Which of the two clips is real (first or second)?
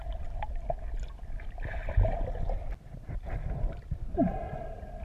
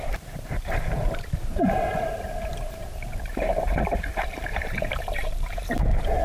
first